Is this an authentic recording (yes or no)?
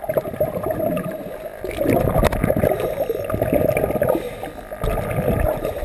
yes